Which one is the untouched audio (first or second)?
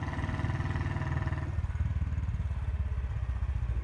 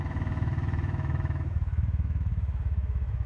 first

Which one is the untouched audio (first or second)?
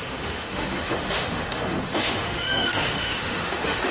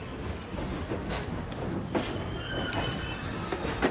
second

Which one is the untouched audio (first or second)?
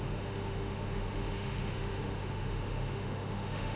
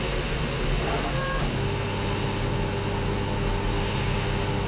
second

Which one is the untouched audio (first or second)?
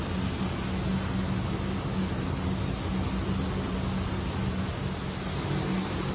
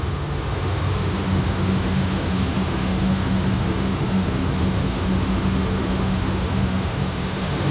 first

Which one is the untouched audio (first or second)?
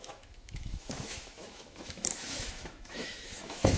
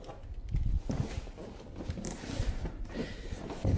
second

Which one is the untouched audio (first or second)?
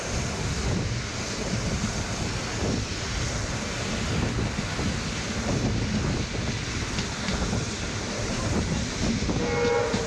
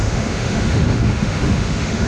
first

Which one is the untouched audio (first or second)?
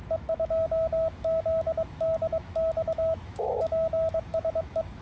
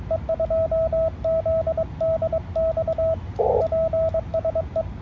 second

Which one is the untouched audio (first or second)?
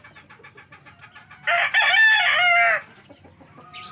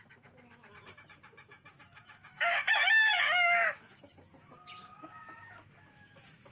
first